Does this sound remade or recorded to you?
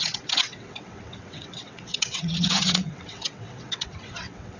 remade